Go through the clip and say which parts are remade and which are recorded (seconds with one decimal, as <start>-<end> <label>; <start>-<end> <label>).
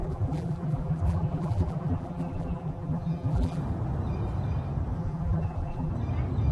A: 0.0-3.6 remade; 3.6-5.0 recorded; 5.0-5.9 remade; 5.9-6.5 recorded